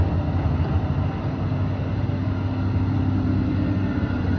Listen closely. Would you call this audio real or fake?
real